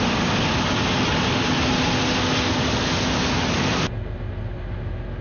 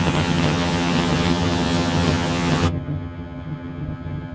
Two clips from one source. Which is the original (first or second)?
first